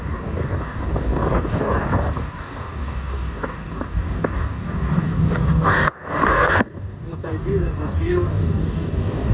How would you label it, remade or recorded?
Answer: remade